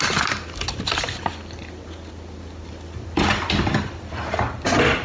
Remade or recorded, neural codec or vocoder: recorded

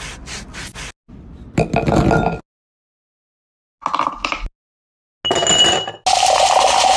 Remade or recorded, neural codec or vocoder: recorded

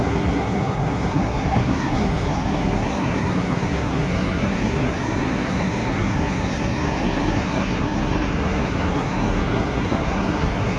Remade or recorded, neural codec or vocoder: remade, codec, SNAC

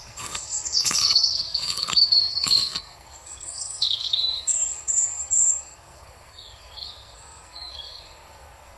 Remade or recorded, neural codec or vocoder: remade, codec, SNAC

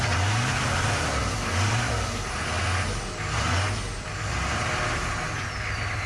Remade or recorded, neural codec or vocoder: recorded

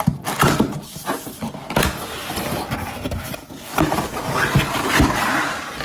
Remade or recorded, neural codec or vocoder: recorded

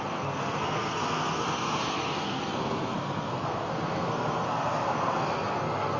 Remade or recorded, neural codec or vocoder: remade, codec, SNAC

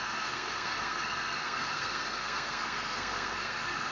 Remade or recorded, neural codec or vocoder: remade, codec, SNAC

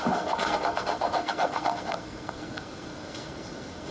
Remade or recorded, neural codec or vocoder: remade, codec, SNAC